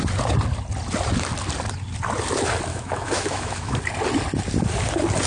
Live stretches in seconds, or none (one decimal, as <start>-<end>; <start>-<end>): 0.0-2.7; 3.8-5.3